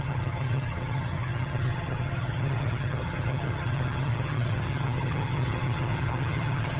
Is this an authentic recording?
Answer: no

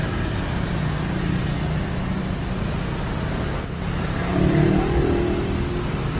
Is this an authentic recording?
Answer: yes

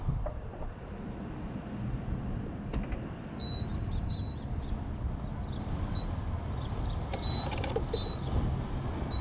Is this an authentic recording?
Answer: yes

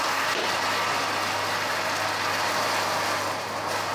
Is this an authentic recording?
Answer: yes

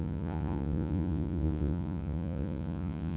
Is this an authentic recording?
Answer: no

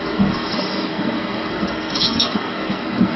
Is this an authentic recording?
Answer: no